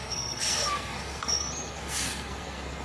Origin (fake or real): fake